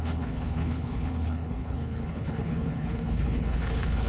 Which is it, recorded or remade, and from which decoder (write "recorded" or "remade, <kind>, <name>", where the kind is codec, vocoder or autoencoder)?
remade, codec, HILCodec